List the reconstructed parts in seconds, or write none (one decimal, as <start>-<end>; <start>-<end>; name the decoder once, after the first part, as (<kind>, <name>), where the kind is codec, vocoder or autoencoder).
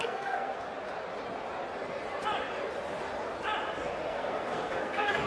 0.0-0.7 (codec, SNAC); 3.9-5.3